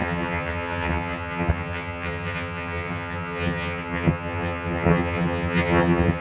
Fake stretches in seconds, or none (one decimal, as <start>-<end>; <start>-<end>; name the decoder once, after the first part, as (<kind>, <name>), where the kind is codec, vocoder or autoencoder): 0.0-6.2 (vocoder, HiFi-GAN)